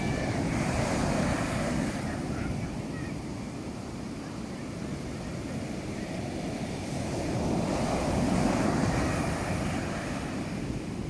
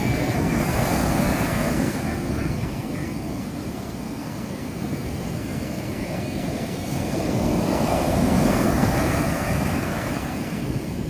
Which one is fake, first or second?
second